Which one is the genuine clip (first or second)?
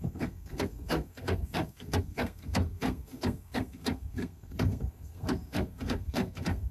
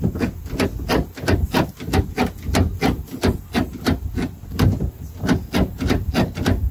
second